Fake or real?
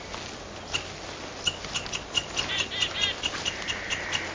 real